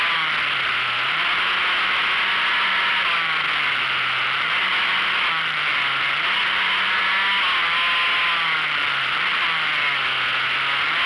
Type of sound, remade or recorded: recorded